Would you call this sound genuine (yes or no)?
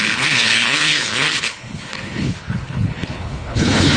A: no